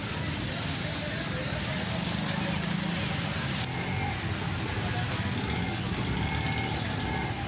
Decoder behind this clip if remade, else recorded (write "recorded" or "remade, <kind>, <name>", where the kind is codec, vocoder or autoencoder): recorded